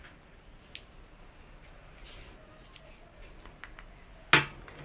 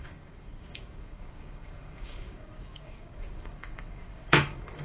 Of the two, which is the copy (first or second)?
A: second